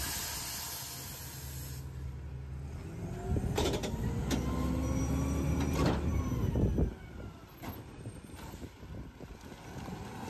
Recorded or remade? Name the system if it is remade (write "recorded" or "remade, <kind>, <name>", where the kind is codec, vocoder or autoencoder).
recorded